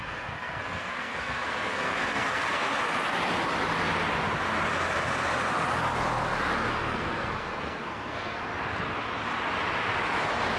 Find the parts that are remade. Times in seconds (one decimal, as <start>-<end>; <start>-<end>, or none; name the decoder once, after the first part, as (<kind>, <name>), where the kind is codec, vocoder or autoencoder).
0.0-2.7 (codec, SNAC); 6.7-8.5